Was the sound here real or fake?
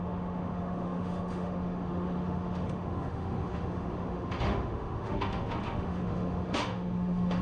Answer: fake